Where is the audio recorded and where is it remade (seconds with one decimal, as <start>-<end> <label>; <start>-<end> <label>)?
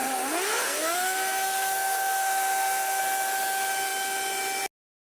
0.0-3.0 remade; 3.0-5.0 recorded